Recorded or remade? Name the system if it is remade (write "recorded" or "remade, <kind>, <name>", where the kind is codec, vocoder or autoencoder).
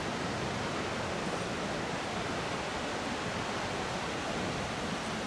recorded